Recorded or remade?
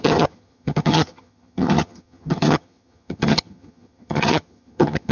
remade